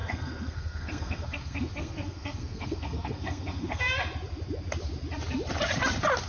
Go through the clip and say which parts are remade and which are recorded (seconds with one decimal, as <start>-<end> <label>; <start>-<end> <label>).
0.0-3.8 remade; 3.8-6.3 recorded